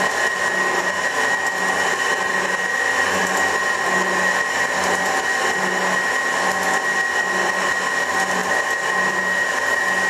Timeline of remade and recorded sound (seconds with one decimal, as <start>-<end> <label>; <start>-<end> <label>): 0.0-3.2 recorded; 3.2-5.2 remade; 5.2-10.1 recorded